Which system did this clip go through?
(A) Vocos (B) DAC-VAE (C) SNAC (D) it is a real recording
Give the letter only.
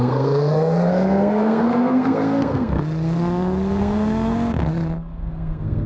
C